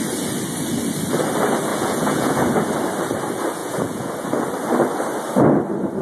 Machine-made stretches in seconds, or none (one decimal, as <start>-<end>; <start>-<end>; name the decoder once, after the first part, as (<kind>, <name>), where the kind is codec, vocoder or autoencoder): 1.7-2.3 (vocoder, Vocos); 3.6-4.1